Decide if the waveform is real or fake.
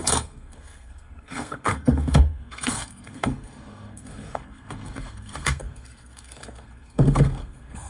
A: fake